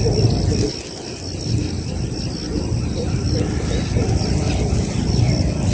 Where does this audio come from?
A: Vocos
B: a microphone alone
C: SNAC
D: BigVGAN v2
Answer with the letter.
B